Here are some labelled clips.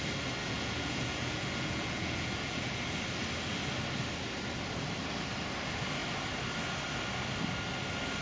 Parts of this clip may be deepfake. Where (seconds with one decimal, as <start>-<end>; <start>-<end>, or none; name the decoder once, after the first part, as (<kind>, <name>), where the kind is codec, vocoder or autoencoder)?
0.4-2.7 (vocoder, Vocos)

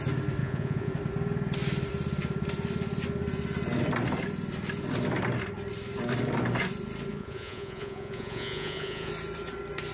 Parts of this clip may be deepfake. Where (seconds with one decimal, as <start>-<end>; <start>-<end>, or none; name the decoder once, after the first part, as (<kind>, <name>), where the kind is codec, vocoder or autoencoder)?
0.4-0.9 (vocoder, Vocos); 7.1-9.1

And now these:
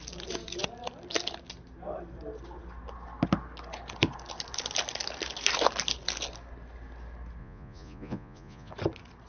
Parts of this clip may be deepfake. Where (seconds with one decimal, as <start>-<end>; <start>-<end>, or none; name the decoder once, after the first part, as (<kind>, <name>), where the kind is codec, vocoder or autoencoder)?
7.4-8.7 (vocoder, Vocos)

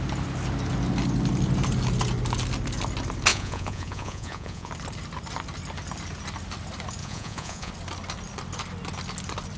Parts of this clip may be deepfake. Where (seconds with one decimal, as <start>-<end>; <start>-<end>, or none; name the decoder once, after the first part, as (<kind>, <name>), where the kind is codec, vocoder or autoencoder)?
3.3-4.7 (vocoder, Vocos); 7.0-7.7